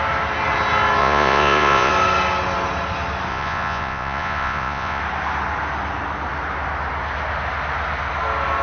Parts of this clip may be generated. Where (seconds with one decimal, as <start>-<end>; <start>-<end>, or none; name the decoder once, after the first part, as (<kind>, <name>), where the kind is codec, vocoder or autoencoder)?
1.0-1.9 (vocoder, Vocos); 3.3-5.0